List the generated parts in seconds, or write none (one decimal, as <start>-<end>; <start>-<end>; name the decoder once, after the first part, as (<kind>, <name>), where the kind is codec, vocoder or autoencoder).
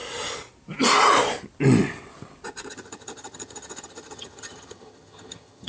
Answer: 2.7-5.7 (vocoder, HiFi-GAN)